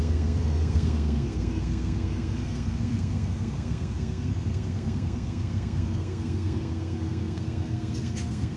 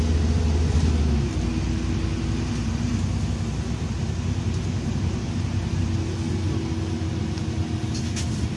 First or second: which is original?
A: second